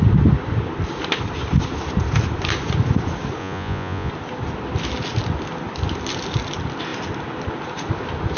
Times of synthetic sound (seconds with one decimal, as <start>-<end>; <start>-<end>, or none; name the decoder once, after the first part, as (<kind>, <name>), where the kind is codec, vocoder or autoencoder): 3.4-4.1 (vocoder, Vocos)